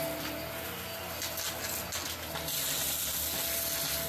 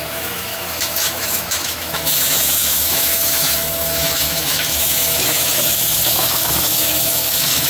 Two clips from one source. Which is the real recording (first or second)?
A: first